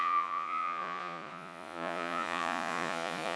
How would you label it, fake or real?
fake